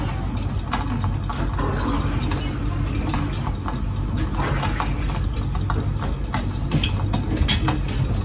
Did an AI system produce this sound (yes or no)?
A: no